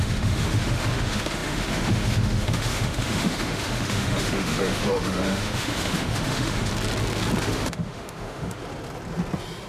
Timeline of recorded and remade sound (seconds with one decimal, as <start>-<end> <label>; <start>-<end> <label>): 0.0-6.7 remade; 6.7-7.4 recorded; 7.4-8.6 remade; 8.6-9.7 recorded